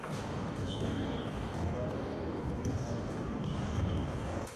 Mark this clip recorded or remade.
remade